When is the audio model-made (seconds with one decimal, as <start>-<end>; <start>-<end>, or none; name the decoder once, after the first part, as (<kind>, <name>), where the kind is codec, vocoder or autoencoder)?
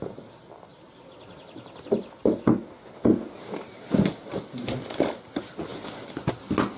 none